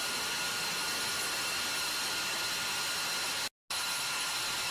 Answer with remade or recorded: recorded